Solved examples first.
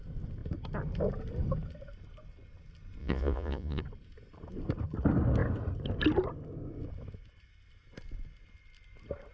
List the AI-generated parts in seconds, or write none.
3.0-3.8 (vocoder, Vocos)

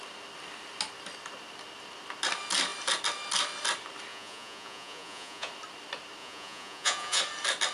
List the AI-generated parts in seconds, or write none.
4.1-5.5 (vocoder, Vocos); 6.2-7.2

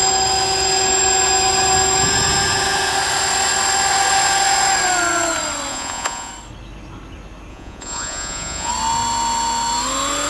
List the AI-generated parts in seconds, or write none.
5.7-6.3 (vocoder, Vocos); 7.5-8.7

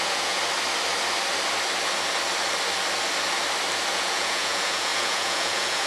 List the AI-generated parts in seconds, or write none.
0.0-0.4 (vocoder, Vocos); 3.9-5.9

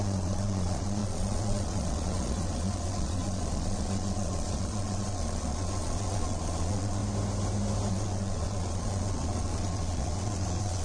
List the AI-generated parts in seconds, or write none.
0.0-7.0 (vocoder, Vocos); 7.9-10.8

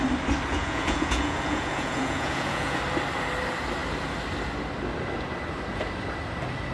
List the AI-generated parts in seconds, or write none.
0.5-2.8 (vocoder, Vocos)

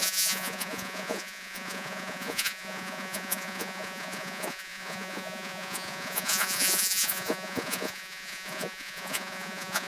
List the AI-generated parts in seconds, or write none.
0.0-9.9 (vocoder, Vocos)

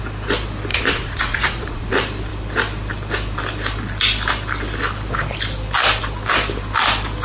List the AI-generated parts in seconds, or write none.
0.7-1.9 (vocoder, Vocos)